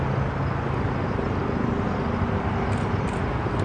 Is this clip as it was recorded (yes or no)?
yes